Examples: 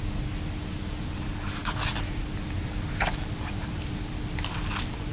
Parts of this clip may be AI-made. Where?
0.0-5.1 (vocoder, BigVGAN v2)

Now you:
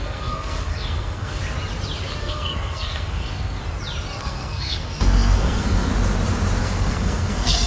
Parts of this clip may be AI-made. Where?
0.0-1.4 (codec, SNAC); 2.2-3.6; 4.2-5.9; 6.6-7.7

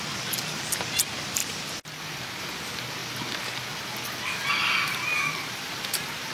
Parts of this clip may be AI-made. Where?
4.9-6.3 (vocoder, BigVGAN v2)

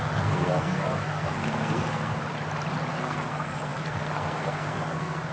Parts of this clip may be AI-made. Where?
0.0-2.2 (codec, SNAC); 2.9-5.3

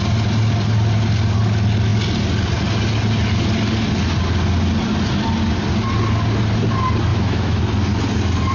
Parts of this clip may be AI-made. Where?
7.1-7.6 (autoencoder, DAC-VAE)